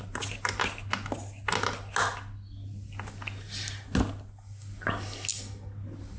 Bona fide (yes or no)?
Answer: yes